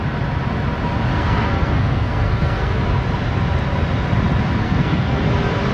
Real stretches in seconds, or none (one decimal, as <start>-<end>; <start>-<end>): 0.0-1.1; 2.8-4.6; 5.2-5.7